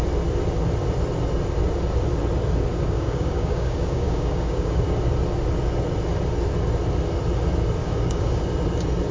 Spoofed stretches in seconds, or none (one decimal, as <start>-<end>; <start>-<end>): 2.7-5.0; 7.8-8.4